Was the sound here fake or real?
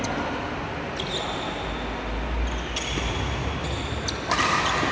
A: real